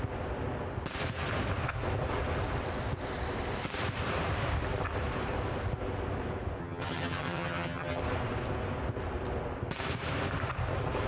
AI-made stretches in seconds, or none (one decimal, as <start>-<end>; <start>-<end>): 6.6-8.0